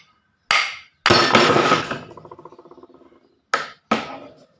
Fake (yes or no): no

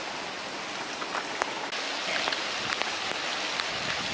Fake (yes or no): no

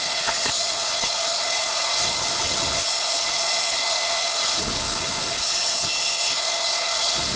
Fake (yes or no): yes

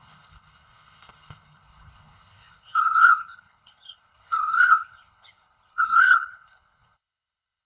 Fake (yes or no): yes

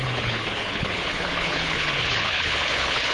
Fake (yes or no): yes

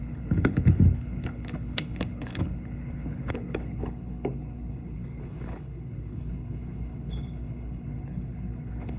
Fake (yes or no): yes